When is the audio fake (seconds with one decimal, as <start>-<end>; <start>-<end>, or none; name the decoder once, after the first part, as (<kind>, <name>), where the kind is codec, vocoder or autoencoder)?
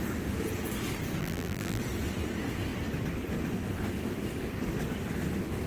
1.2-1.8 (vocoder, BigVGAN v2)